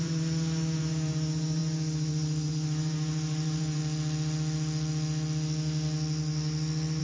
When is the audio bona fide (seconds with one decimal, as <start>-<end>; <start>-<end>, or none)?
3.8-7.0